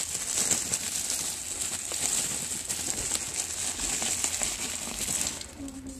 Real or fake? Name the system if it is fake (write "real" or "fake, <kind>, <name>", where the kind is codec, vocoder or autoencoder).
real